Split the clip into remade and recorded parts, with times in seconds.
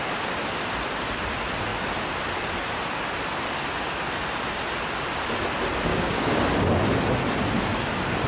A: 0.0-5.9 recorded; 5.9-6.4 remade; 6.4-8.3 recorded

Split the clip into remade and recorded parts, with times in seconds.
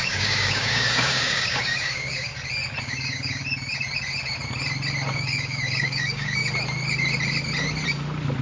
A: 0.0-2.3 remade; 2.3-2.8 recorded; 2.8-3.4 remade; 3.4-5.1 recorded; 5.1-6.4 remade; 6.4-8.4 recorded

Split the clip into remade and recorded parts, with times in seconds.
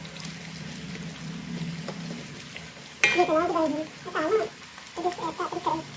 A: 0.0-6.0 recorded